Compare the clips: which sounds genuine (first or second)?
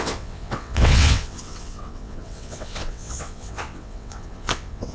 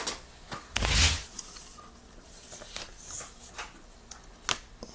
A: second